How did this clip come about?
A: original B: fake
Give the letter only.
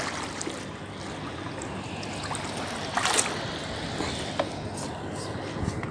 A